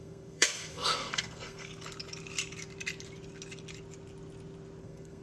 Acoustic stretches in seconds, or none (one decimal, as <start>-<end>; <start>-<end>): 1.7-4.8